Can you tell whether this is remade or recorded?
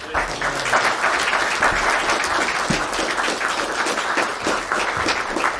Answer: recorded